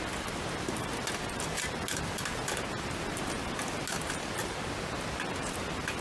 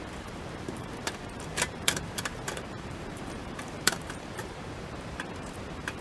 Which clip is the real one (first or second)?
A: first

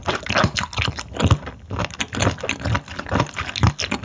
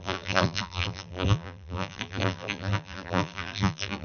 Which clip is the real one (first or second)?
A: first